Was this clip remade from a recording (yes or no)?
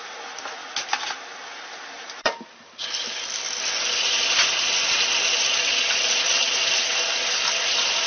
no